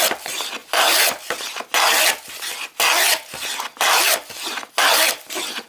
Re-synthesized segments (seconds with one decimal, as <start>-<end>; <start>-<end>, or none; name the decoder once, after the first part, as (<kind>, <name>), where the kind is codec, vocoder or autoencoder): none